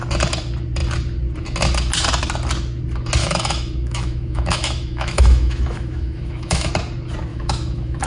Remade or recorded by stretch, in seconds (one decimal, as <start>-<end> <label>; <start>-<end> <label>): 0.0-3.2 recorded; 3.2-6.7 remade; 6.7-7.3 recorded; 7.3-8.1 remade

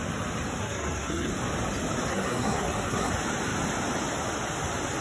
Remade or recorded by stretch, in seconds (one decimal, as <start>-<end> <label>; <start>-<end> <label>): 0.0-0.6 recorded; 0.6-1.3 remade; 1.3-2.1 recorded; 2.1-3.1 remade; 3.1-5.0 recorded

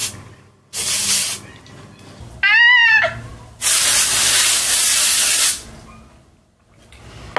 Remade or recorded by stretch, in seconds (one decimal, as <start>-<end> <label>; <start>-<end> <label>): 0.0-7.4 recorded

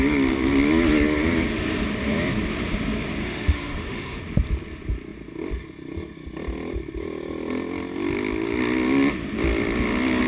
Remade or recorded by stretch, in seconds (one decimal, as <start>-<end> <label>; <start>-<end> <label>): 0.0-3.2 recorded; 3.2-4.2 remade; 4.2-10.3 recorded

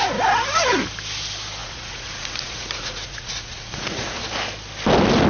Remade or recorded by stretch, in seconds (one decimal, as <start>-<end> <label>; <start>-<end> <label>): 0.0-1.6 recorded; 1.6-4.2 remade; 4.2-5.3 recorded